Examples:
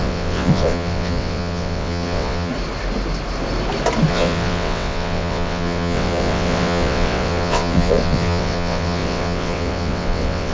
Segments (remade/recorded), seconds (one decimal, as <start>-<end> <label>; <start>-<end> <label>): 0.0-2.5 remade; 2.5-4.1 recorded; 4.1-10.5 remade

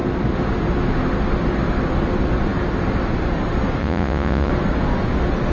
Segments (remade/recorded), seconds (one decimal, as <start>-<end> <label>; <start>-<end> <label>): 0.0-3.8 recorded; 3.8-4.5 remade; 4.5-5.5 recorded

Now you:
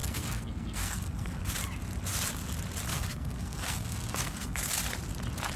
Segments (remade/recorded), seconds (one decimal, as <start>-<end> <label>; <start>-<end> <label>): 0.0-1.4 remade; 1.4-2.9 recorded; 2.9-4.7 remade; 4.7-5.6 recorded